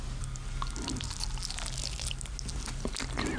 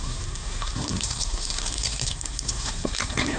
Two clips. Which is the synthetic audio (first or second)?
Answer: second